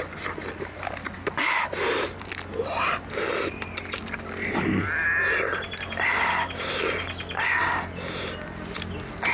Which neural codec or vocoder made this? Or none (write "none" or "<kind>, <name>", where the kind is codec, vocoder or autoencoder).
none